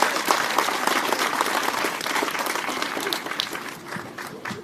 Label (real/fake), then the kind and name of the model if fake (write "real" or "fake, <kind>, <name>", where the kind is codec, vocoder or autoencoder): real